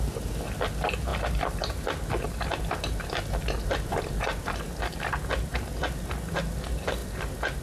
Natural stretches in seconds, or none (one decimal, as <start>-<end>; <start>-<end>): 0.0-7.6